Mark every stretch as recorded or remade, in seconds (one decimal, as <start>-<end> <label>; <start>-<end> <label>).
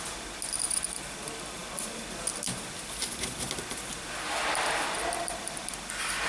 0.0-6.3 recorded